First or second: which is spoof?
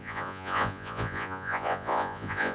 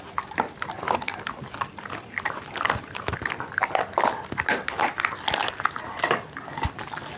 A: first